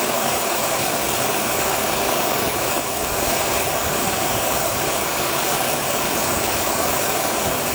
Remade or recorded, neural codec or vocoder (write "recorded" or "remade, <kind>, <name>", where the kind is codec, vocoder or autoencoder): remade, codec, DAC